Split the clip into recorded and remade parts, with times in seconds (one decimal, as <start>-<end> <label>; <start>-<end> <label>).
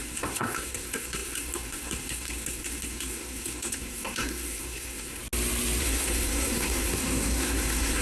0.0-5.2 remade; 5.2-5.8 recorded; 5.8-8.0 remade